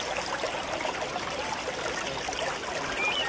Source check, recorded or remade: recorded